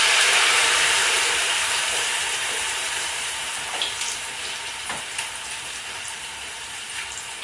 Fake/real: fake